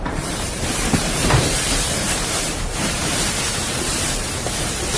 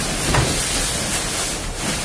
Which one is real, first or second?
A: second